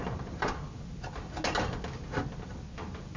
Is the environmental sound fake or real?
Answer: real